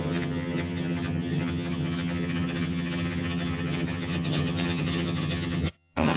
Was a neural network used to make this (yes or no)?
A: yes